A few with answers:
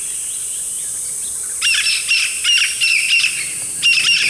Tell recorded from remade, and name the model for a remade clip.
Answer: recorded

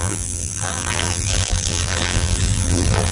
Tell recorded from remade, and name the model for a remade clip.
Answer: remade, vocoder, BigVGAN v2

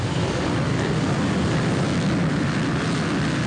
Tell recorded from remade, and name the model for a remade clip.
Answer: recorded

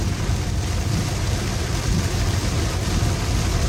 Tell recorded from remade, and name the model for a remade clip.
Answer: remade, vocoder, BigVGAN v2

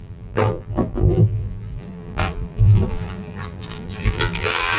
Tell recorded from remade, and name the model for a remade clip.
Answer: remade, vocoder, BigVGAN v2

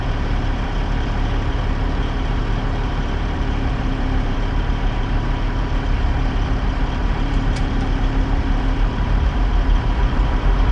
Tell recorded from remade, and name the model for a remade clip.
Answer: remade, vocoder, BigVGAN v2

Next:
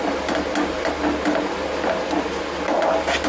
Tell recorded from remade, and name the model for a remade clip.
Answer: recorded